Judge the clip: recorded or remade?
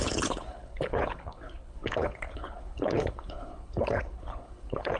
remade